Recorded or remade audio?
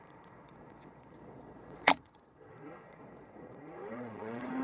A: remade